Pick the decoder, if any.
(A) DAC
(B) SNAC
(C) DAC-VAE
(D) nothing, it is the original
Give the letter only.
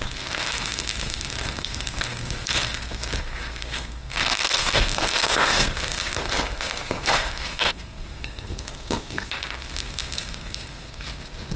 B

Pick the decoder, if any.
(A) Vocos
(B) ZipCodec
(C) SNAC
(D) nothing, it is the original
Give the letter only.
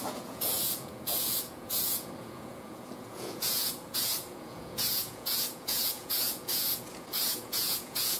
A